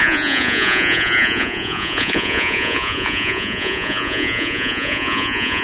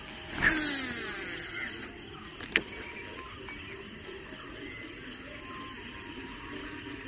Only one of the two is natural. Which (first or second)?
second